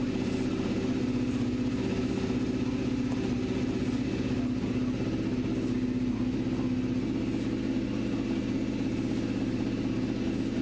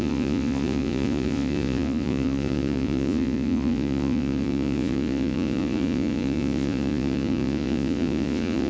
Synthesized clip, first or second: second